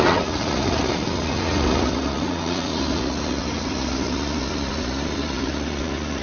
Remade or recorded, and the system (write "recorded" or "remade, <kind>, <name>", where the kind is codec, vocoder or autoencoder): remade, vocoder, Vocos